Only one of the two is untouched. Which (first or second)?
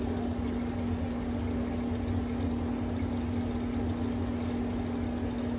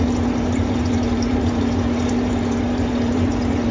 first